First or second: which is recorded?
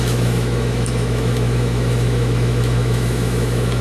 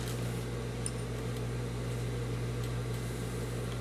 second